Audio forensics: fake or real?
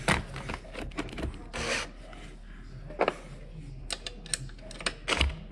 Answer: real